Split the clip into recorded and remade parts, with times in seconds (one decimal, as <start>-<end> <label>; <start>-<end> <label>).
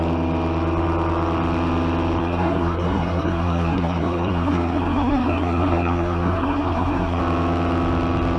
0.0-2.2 recorded; 2.2-7.2 remade; 7.2-8.4 recorded